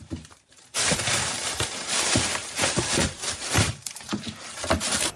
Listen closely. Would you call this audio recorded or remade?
remade